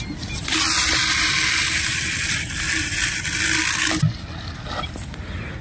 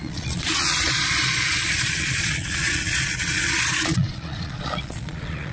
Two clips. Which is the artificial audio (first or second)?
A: second